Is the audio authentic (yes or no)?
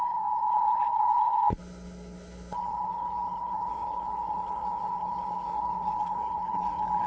no